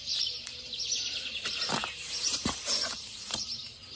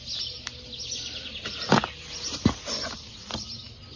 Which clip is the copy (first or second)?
first